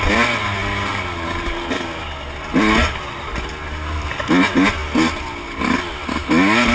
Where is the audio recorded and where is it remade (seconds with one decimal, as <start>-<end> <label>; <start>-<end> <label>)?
0.0-6.7 recorded